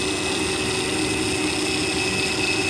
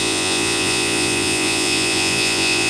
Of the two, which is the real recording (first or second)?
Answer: first